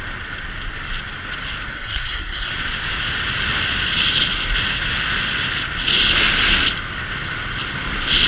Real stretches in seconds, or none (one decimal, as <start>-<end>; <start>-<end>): 0.0-1.7; 2.5-8.3

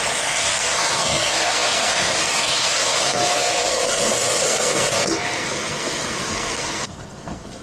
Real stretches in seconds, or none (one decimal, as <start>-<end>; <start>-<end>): none

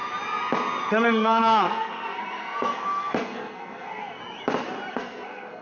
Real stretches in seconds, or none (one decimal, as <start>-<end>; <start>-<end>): 0.0-0.9; 4.2-4.9